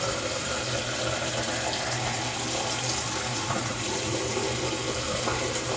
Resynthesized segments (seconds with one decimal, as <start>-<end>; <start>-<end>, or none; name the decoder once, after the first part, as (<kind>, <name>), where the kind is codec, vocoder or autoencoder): 3.3-4.2 (vocoder, Vocos)